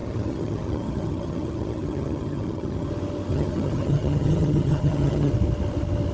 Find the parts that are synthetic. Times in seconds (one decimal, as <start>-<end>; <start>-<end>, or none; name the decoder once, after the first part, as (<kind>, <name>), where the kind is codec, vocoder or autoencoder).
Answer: 0.0-2.9 (vocoder, HiFi-GAN); 3.3-5.3

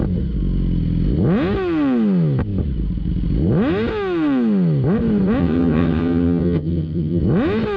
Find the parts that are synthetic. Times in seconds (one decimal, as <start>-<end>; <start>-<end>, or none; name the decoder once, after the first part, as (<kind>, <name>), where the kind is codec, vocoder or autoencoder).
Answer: 5.4-7.2 (vocoder, HiFi-GAN)

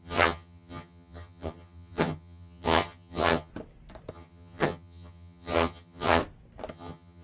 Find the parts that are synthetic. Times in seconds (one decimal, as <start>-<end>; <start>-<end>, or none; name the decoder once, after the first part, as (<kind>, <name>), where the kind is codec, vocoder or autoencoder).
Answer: 0.0-3.5 (vocoder, HiFi-GAN); 4.1-6.2; 6.7-7.2

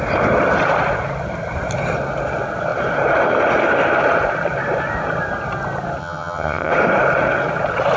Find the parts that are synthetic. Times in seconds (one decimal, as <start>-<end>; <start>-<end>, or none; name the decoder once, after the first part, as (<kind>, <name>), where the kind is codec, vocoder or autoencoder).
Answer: 6.0-6.7 (vocoder, HiFi-GAN)